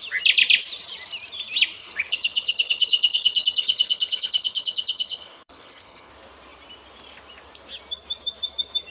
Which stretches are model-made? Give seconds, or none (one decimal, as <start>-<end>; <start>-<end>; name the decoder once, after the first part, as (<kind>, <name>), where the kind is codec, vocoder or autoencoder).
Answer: 1.8-6.1 (codec, HILCodec)